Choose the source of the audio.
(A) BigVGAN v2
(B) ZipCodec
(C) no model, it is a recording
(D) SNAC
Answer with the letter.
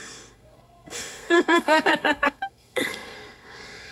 D